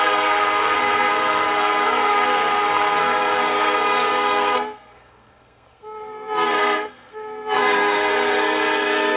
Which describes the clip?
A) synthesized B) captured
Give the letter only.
A